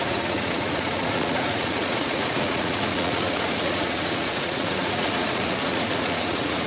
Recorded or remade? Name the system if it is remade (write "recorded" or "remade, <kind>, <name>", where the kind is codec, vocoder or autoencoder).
remade, vocoder, Vocos